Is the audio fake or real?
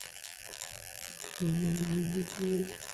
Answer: fake